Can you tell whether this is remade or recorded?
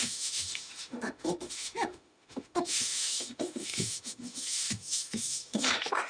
remade